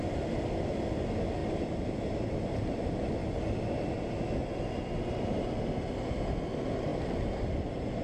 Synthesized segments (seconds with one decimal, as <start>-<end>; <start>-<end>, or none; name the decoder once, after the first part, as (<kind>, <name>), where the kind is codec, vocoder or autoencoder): none